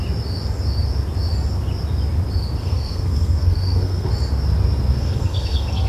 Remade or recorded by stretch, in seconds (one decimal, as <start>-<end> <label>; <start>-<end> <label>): 0.0-2.6 recorded; 2.6-4.1 remade; 4.1-4.9 recorded; 4.9-5.9 remade